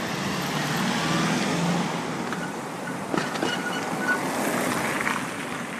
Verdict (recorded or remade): recorded